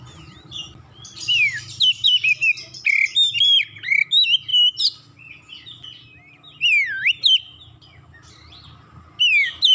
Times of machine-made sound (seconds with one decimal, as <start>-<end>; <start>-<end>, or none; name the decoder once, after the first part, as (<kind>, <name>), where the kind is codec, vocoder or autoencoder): none